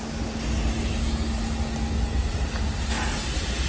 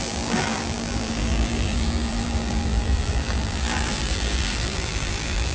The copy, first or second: second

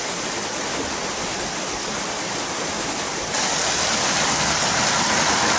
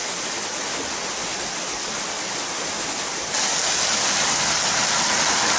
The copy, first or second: first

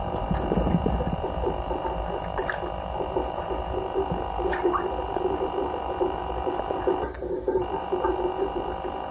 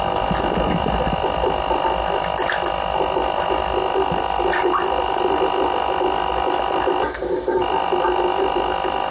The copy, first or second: first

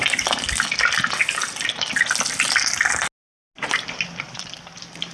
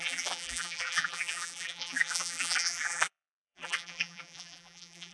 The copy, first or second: second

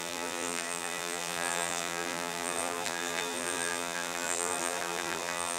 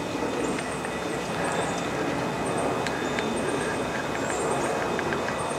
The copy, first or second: first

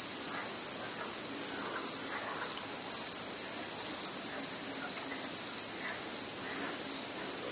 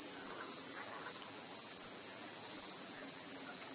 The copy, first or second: second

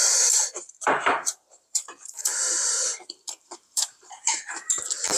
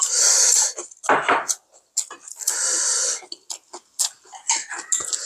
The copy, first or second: first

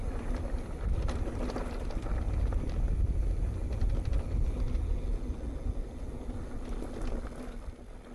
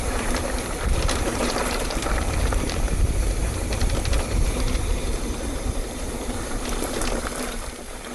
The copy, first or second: second